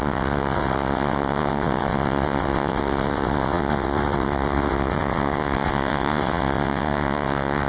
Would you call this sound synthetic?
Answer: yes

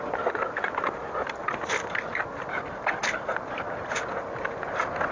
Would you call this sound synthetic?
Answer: no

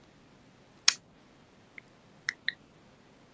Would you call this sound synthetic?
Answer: no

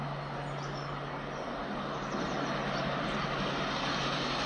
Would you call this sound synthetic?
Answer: no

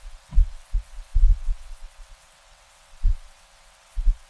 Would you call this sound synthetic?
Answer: yes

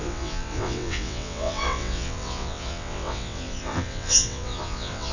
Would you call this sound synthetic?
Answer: yes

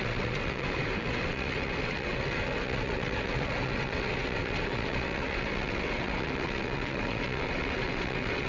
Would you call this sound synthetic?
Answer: yes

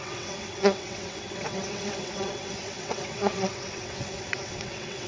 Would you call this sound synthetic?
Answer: yes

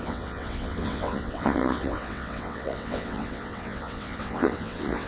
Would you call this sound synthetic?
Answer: yes